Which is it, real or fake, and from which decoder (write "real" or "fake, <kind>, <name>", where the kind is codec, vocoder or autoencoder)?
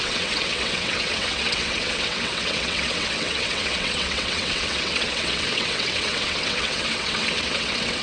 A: fake, vocoder, WaveNeXt